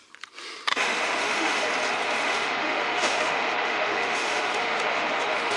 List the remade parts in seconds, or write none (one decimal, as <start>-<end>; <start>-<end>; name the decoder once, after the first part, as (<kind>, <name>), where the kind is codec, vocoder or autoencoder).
0.7-1.7 (autoencoder, DAC-VAE); 2.2-5.6